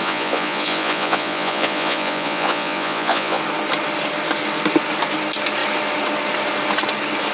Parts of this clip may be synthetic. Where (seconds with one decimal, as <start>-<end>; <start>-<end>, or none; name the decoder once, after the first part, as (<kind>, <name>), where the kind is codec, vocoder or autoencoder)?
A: 0.0-3.4 (vocoder, Vocos)